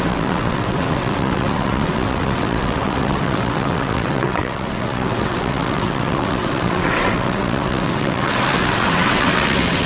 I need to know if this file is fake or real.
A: fake